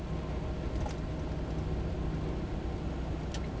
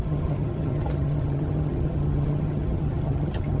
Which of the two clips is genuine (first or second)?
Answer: first